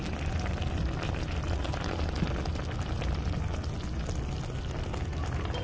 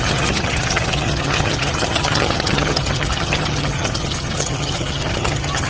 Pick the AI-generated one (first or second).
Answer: second